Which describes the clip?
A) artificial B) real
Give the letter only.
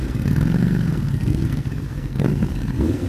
A